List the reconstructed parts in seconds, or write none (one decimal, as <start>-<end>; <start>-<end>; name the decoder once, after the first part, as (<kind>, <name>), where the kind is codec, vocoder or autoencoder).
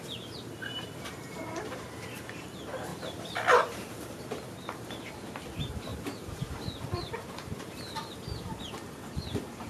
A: 0.0-2.9 (vocoder, BigVGAN v2); 3.6-9.7